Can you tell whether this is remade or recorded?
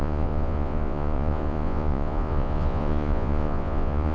remade